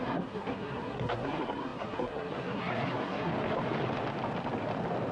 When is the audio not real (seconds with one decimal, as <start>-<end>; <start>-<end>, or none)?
0.0-3.3